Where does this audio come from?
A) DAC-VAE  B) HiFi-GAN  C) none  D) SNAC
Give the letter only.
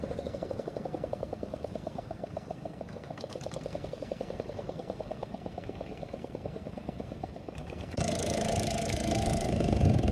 D